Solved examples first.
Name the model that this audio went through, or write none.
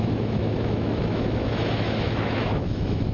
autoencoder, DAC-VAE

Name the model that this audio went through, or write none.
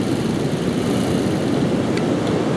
none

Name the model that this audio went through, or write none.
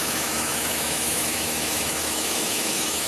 autoencoder, DAC-VAE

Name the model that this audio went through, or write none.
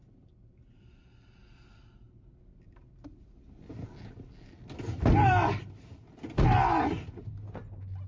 none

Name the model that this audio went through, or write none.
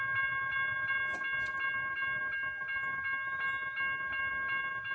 none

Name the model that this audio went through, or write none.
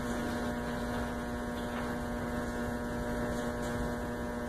none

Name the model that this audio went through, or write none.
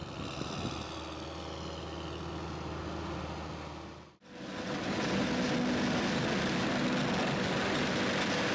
none